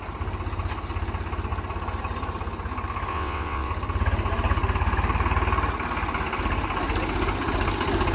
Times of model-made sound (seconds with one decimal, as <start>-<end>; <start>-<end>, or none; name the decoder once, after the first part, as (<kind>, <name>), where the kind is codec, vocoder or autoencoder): 3.1-3.7 (vocoder, WaveNeXt)